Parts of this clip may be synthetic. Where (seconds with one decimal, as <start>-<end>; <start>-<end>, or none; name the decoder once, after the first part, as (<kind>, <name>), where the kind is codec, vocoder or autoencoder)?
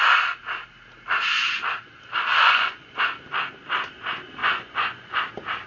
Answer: 2.4-3.0 (vocoder, Vocos); 4.4-5.2